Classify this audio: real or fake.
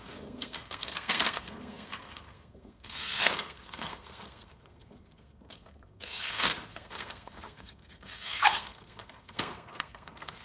fake